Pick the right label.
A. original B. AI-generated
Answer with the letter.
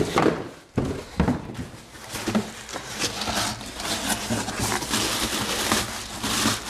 A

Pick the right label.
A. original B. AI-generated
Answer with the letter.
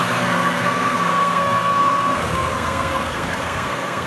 B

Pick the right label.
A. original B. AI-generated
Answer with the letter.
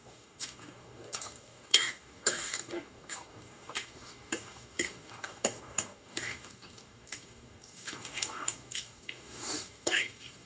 B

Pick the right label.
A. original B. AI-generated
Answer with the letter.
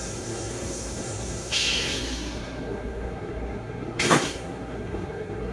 B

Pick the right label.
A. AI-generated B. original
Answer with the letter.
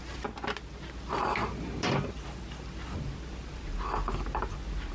B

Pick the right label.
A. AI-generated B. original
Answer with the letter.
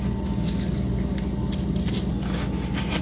B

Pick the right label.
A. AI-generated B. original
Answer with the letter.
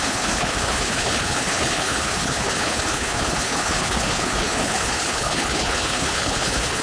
A